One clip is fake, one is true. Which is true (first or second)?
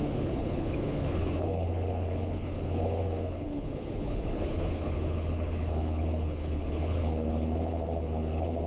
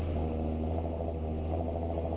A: second